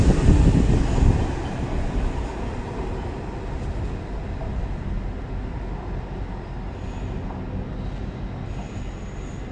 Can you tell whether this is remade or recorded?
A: recorded